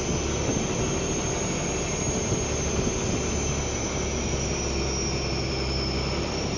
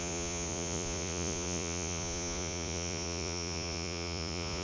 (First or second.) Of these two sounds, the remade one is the second